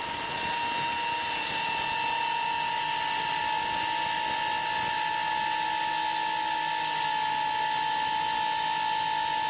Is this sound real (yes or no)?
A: yes